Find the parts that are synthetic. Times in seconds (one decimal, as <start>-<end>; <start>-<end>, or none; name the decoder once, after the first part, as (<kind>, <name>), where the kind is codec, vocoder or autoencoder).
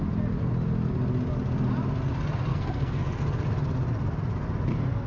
2.5-3.2 (codec, SNAC)